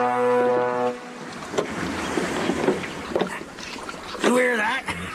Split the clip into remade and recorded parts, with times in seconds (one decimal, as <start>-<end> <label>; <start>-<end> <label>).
0.0-5.1 recorded